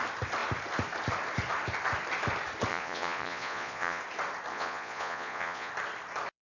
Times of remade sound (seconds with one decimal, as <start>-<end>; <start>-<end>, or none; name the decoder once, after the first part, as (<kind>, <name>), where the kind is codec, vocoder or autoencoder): 2.7-4.0 (vocoder, Vocos); 4.5-5.7